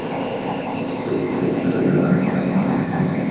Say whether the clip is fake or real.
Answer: fake